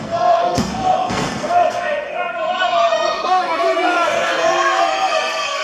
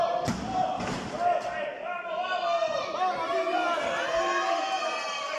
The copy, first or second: first